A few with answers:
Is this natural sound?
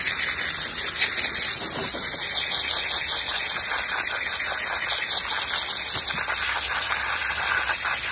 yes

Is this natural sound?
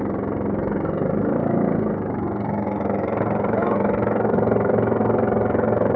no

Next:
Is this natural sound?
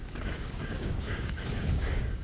no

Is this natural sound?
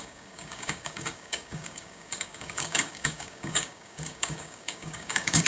no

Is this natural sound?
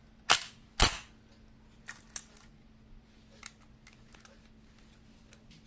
yes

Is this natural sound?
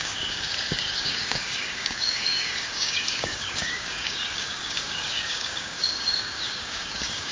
no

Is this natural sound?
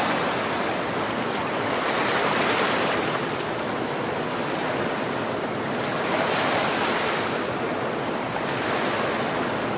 yes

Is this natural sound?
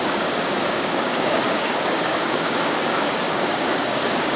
no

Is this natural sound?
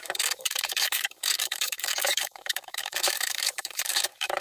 no